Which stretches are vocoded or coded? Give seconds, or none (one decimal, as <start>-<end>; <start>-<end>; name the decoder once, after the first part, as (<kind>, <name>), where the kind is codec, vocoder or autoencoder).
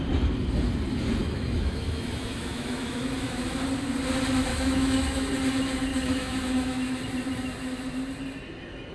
1.2-3.6 (autoencoder, DAC-VAE); 4.5-5.3; 5.9-7.0